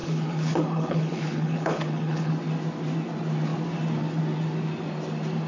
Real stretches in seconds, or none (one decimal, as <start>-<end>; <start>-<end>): 2.3-5.5